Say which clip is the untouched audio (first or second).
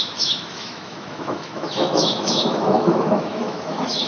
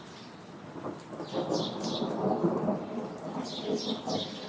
second